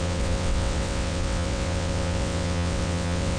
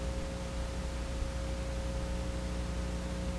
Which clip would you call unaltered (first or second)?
second